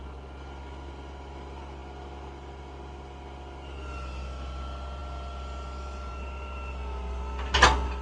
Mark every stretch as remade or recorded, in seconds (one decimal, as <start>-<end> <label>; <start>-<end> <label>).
0.0-8.0 recorded